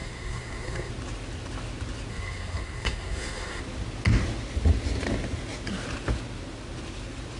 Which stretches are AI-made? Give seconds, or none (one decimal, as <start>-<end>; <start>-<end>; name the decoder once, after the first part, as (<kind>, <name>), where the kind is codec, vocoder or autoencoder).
0.0-0.9 (codec, SNAC); 2.1-3.6